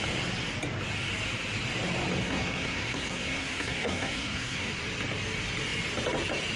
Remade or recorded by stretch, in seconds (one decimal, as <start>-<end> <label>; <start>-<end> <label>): 0.0-2.2 recorded; 2.2-4.7 remade; 4.7-6.6 recorded